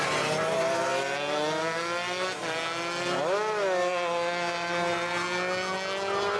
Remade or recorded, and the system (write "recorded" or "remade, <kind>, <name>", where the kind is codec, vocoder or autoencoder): recorded